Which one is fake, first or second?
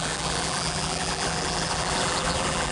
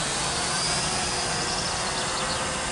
first